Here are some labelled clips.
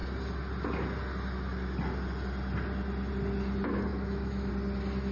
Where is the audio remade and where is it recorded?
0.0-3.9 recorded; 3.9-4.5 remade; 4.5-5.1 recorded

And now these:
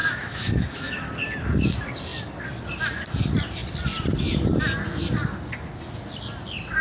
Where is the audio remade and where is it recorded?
0.0-1.1 remade; 1.1-6.8 recorded

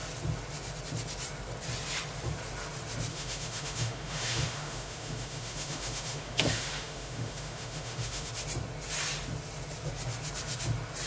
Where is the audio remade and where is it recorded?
0.0-3.1 recorded; 3.1-8.3 remade; 8.3-11.1 recorded

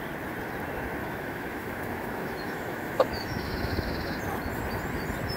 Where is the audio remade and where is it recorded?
0.0-1.0 recorded; 1.0-4.2 remade; 4.2-5.4 recorded

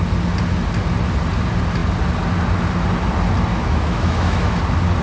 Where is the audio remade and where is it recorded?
0.0-3.5 recorded; 3.5-4.6 remade; 4.6-5.0 recorded

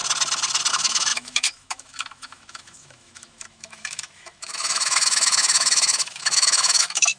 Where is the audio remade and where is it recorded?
0.0-0.7 recorded; 0.7-7.2 remade

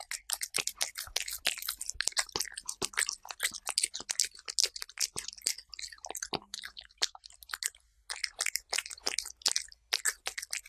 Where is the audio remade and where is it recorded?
0.0-6.4 recorded; 6.4-7.2 remade; 7.2-10.7 recorded

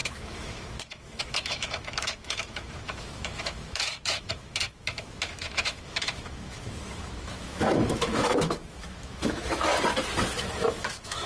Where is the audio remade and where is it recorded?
0.0-9.7 remade; 9.7-10.3 recorded; 10.3-11.3 remade